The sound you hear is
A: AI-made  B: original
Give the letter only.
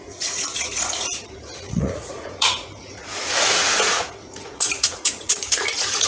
A